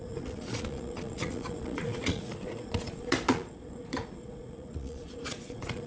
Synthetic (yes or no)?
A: yes